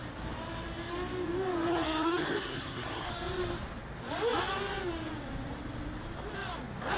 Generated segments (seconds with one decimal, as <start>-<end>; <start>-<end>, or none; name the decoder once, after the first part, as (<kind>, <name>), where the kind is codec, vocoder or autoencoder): 1.7-3.1 (codec, SNAC)